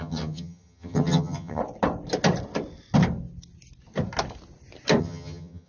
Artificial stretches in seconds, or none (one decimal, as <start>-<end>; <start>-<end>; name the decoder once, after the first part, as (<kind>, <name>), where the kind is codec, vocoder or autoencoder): 0.0-1.6 (vocoder, HiFi-GAN); 5.0-5.7